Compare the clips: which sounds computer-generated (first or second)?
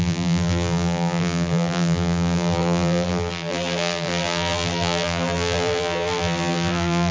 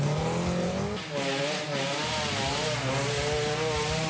first